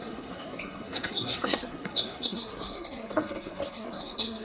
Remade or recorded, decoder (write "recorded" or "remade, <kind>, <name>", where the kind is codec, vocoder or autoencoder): remade, codec, SNAC